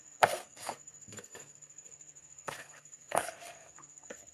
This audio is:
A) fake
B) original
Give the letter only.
A